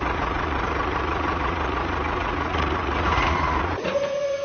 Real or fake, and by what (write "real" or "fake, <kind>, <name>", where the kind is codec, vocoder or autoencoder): fake, vocoder, Vocos